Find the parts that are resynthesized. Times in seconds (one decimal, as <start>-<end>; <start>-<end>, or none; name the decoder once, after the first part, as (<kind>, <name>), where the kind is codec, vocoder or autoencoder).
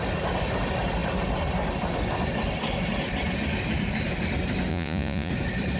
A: 4.7-5.3 (vocoder, Vocos)